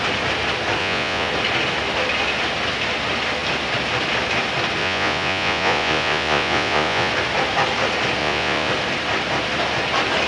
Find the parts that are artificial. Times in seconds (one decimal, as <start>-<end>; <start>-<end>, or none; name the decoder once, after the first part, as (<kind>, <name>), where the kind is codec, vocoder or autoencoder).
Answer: 0.8-1.3 (vocoder, Vocos); 4.8-7.1; 8.2-8.7